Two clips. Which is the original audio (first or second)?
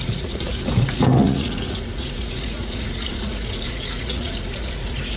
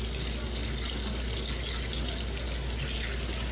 second